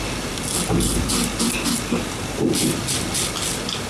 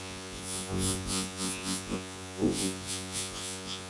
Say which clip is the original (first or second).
first